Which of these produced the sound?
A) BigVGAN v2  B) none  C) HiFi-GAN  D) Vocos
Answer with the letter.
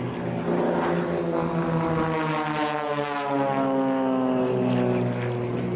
B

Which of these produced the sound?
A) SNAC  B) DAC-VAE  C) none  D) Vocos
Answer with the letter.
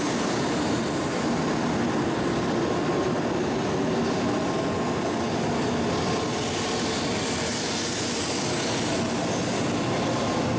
C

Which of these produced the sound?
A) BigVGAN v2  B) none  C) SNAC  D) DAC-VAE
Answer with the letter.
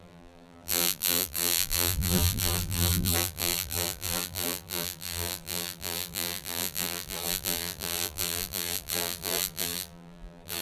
A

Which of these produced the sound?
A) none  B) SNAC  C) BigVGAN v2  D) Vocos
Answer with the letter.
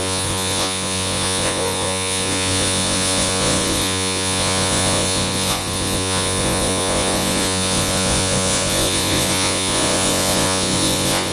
D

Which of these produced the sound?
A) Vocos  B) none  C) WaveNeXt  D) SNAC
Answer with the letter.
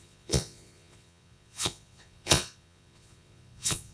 A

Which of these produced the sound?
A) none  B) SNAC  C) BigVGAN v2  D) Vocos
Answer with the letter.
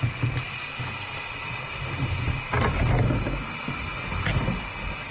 A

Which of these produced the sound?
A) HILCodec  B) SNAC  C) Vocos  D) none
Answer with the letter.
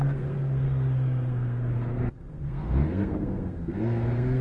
B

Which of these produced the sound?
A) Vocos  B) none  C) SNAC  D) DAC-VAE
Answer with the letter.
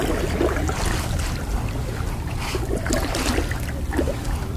B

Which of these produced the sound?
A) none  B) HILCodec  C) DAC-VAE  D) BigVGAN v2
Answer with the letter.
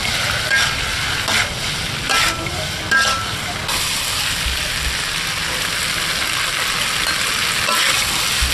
A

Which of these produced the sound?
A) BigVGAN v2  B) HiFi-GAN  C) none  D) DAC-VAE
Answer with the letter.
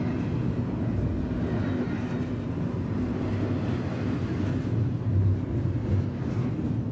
C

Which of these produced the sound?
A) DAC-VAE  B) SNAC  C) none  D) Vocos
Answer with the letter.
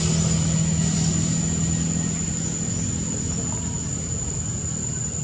C